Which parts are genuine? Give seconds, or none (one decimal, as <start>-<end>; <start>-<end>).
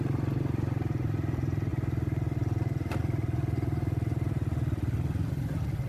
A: 0.0-5.9